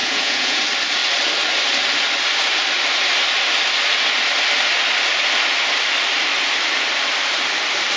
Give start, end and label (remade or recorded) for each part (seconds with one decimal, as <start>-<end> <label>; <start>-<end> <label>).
0.0-0.6 remade; 0.6-8.0 recorded